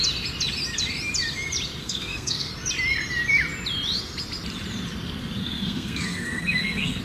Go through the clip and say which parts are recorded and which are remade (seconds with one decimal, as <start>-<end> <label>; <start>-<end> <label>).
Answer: 0.0-1.8 recorded; 1.8-2.5 remade; 2.5-5.4 recorded; 5.4-7.0 remade